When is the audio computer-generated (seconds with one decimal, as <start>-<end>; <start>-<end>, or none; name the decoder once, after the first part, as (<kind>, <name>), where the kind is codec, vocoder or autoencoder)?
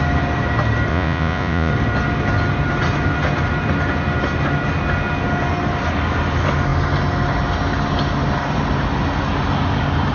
0.9-1.7 (vocoder, Vocos)